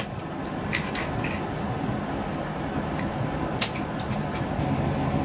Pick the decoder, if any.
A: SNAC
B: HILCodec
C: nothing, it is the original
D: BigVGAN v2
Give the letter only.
C